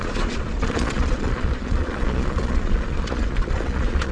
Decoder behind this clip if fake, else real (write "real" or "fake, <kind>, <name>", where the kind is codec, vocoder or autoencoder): fake, vocoder, Vocos